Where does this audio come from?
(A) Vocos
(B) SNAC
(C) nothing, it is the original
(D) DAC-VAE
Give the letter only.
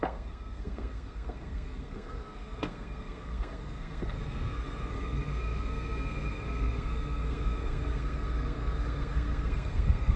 B